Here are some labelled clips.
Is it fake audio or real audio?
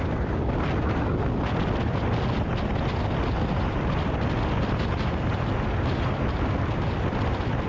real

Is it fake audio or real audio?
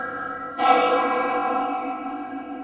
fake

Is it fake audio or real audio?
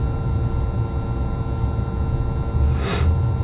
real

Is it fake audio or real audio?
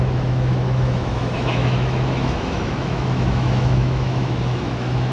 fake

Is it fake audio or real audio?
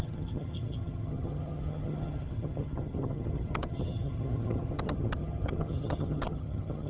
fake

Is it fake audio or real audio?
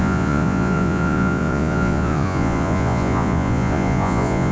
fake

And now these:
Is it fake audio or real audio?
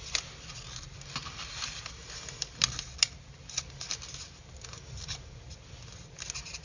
real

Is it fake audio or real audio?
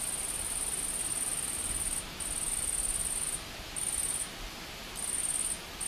real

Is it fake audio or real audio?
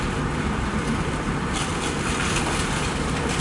fake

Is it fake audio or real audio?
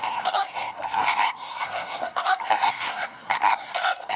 fake